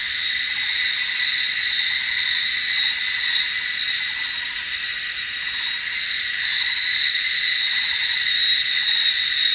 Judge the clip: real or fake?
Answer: real